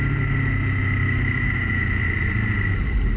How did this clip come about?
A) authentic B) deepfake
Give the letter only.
A